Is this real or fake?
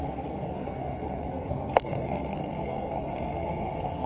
fake